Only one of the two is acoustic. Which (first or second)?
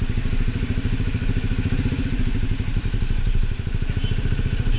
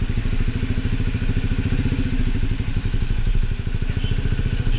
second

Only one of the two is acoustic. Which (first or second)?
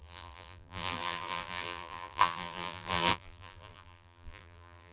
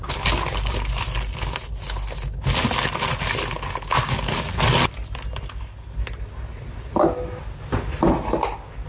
second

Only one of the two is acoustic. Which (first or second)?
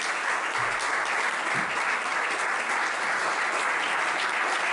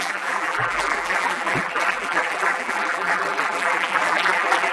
first